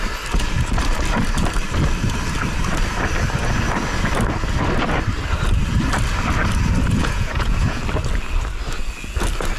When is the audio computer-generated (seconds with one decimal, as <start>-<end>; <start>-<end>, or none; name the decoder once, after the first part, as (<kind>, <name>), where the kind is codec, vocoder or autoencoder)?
7.0-7.8 (vocoder, Vocos)